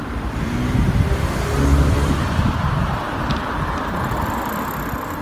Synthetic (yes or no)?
no